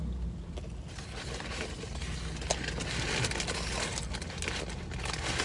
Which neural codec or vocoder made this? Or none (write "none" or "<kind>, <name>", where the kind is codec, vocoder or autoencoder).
none